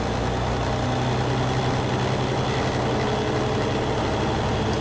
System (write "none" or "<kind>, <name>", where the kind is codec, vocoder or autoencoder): none